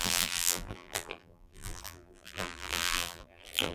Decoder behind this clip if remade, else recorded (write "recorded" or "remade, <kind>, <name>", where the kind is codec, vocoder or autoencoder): remade, vocoder, BigVGAN v2